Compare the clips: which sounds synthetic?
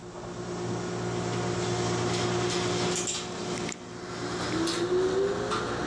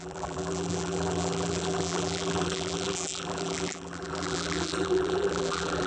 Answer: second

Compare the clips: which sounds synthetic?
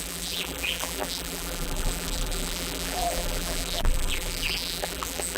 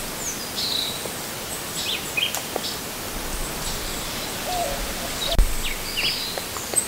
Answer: first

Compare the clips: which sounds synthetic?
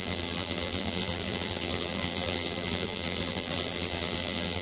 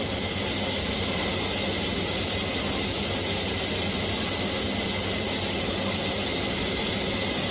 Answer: first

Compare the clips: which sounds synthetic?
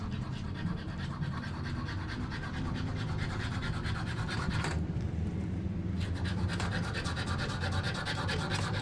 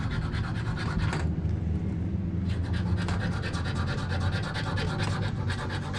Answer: first